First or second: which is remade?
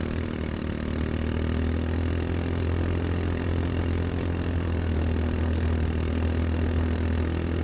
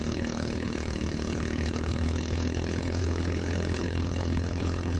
second